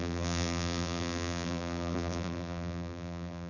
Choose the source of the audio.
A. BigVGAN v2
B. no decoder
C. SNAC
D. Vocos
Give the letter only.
A